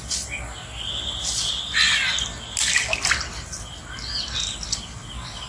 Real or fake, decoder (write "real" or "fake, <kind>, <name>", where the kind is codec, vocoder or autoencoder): real